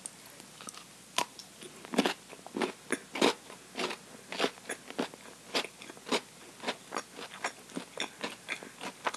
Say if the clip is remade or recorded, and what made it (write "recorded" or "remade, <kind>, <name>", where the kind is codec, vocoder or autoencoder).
recorded